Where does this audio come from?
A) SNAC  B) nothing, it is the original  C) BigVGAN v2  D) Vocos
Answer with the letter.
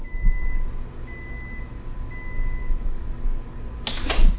B